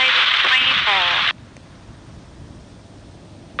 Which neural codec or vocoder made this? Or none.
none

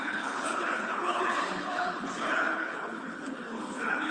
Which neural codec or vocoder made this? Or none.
codec, HILCodec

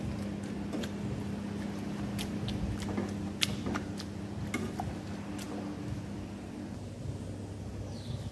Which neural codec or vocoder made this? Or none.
none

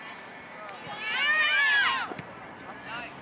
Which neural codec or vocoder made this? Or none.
none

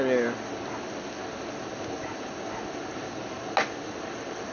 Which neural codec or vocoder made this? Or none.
none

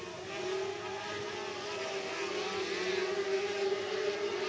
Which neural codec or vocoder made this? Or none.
none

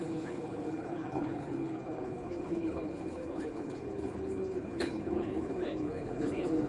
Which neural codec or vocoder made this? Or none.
codec, HILCodec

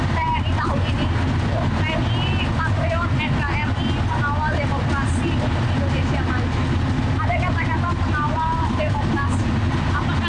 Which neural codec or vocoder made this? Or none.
none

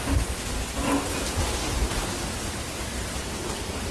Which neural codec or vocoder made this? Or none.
none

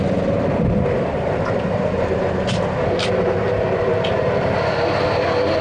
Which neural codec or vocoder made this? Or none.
none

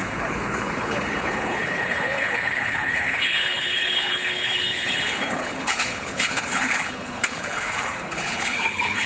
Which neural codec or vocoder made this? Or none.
codec, HILCodec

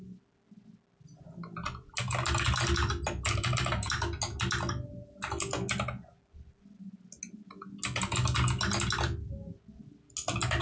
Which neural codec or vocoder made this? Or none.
none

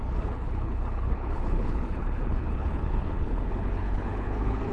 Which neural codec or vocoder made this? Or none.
codec, HILCodec